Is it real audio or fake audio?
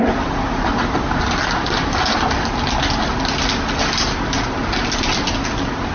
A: real